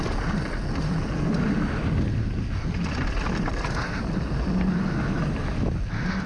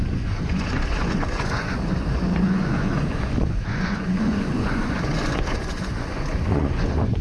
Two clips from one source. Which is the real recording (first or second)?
first